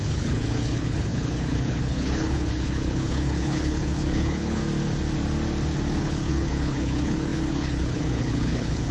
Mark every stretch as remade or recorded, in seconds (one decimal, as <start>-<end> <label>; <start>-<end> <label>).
0.0-4.6 remade; 4.6-6.0 recorded; 6.0-8.9 remade